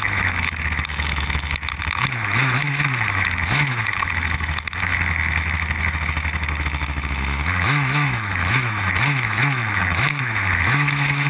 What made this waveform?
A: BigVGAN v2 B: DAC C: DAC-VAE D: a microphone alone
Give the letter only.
C